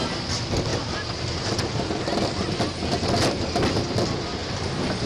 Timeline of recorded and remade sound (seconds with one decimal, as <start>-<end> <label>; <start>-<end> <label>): 0.0-5.1 recorded